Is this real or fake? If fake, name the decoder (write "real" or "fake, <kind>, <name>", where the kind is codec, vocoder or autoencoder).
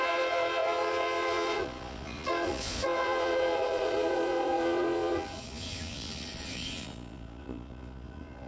fake, vocoder, Vocos